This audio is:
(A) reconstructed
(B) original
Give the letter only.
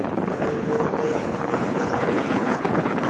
A